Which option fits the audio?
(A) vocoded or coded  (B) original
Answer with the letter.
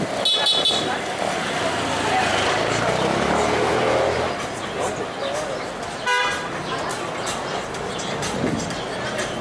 B